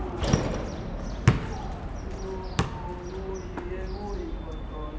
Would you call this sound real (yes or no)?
yes